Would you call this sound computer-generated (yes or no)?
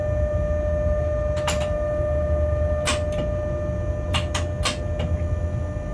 no